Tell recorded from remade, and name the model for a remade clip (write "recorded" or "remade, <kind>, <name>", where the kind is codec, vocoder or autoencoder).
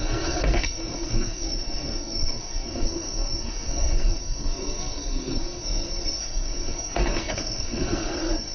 remade, codec, SNAC